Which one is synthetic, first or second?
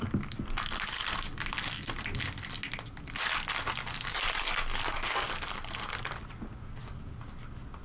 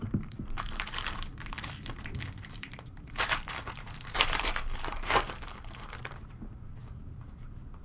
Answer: second